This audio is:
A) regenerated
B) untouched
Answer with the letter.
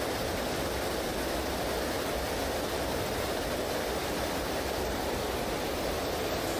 B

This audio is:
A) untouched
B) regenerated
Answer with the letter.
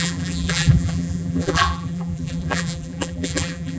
B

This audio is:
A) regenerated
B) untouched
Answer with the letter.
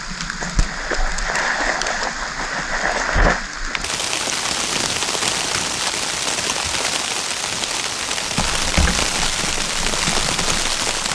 B